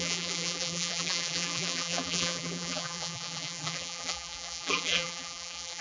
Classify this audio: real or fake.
fake